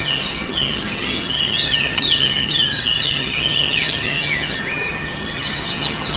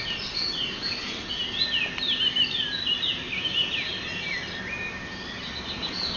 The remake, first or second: first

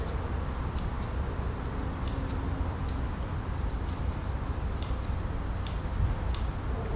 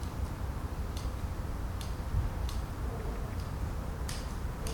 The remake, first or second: second